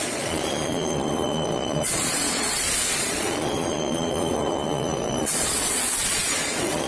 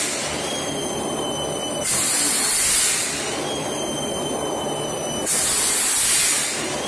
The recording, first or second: second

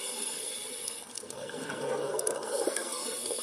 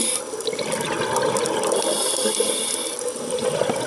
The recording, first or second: second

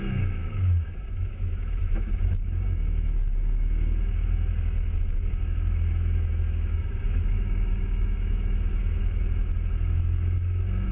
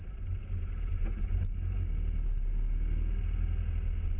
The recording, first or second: second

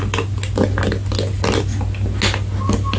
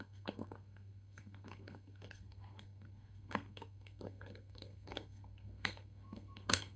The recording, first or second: first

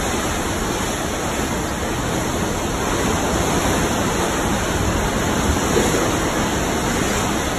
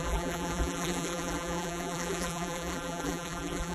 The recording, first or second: first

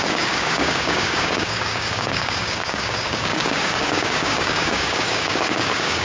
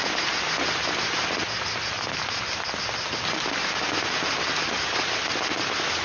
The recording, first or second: second